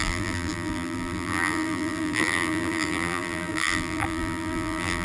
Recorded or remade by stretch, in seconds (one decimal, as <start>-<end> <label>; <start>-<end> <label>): 0.0-5.0 remade